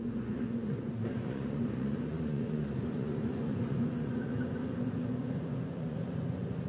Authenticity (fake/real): fake